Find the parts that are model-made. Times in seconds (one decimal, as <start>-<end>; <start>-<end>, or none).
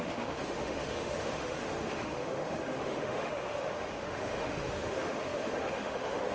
0.0-6.3